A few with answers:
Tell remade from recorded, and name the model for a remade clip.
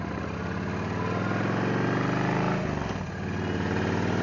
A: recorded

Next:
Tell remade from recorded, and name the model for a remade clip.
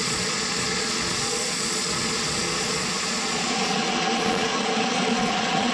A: remade, vocoder, Vocos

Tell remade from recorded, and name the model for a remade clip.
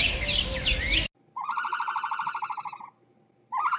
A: recorded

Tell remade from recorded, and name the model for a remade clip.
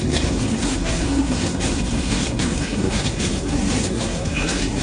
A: remade, codec, SNAC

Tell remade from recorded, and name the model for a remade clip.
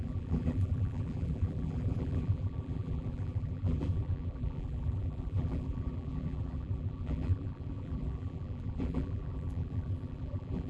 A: remade, vocoder, BigVGAN v2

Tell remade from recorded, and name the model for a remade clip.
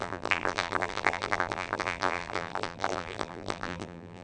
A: remade, vocoder, BigVGAN v2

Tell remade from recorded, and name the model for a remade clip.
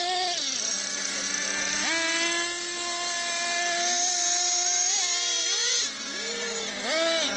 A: recorded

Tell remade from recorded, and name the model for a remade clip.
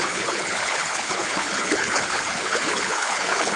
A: remade, codec, HILCodec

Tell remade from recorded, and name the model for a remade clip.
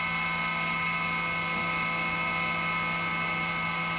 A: recorded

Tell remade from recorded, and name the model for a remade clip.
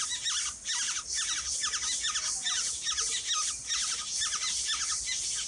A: recorded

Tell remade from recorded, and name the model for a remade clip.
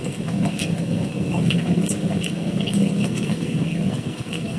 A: remade, codec, SNAC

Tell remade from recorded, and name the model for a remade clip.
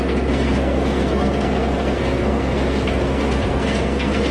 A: remade, codec, SNAC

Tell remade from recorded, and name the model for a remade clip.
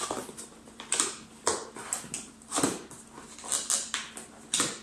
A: recorded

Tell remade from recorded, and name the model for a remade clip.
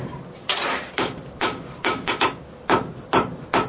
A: recorded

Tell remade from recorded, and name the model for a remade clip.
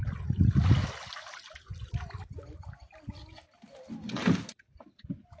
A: recorded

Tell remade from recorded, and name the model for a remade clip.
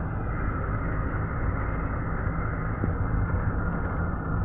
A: recorded